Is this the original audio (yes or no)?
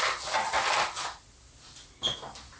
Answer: yes